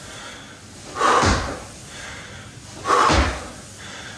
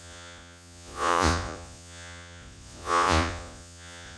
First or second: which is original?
first